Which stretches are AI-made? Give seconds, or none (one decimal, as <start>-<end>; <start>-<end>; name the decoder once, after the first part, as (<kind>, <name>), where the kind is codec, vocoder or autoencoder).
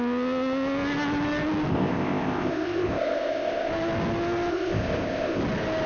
1.7-3.7 (codec, ZipCodec); 4.5-5.4